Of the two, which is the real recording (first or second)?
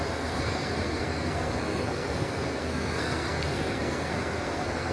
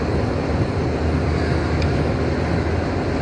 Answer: second